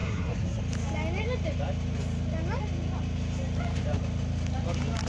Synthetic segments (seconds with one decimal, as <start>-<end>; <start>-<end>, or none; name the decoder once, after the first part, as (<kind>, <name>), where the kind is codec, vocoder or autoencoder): 0.0-0.6 (codec, SNAC)

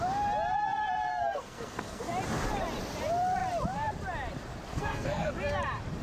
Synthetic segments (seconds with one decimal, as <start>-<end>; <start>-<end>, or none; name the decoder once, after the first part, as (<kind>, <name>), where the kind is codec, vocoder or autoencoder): 1.1-2.0 (codec, SNAC); 4.7-5.3

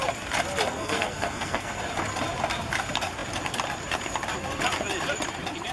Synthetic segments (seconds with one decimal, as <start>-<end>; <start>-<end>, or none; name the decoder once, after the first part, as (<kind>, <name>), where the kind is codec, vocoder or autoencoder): 0.7-1.8 (codec, SNAC)

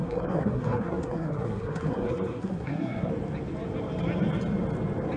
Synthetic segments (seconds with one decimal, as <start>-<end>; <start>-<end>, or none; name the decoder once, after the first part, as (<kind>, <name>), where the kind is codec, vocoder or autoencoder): 0.0-3.1 (codec, SNAC)